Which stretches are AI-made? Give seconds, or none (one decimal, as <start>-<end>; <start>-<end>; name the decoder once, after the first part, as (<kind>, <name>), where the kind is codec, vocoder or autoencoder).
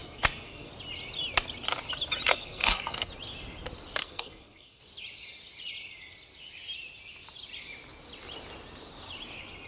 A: 0.0-0.7 (codec, SNAC); 2.3-3.1; 4.0-4.8